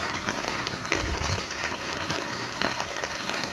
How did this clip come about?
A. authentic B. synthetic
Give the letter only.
B